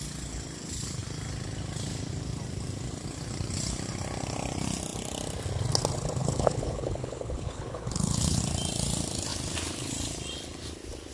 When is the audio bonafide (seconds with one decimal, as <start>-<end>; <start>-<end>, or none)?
0.0-6.2; 8.4-11.1